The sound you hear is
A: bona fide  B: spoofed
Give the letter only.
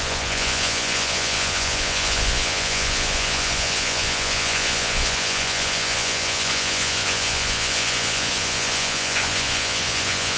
B